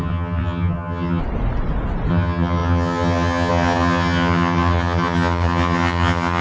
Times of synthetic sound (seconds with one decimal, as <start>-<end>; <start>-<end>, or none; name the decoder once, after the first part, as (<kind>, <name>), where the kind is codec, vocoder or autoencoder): 0.0-1.2 (vocoder, HiFi-GAN); 2.1-6.4